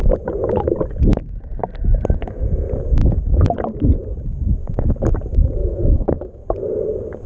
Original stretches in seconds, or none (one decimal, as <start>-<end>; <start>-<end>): 0.0-5.6; 6.4-7.3